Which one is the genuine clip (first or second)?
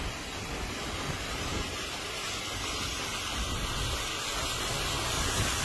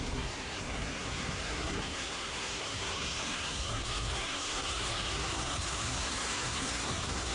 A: first